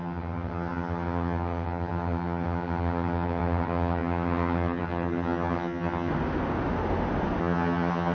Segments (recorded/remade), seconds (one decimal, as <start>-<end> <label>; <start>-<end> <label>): 0.0-6.1 remade; 6.1-7.4 recorded; 7.4-8.1 remade